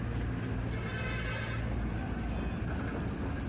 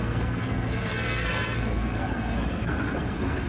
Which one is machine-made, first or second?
second